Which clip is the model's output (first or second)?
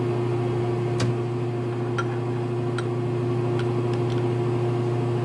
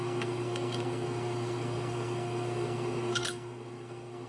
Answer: second